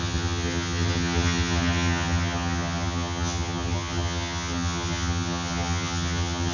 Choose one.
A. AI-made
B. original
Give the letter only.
A